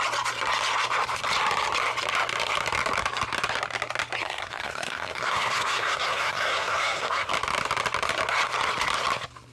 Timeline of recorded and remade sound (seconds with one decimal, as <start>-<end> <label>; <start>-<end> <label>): 0.0-4.2 recorded; 4.2-7.3 remade; 7.3-9.5 recorded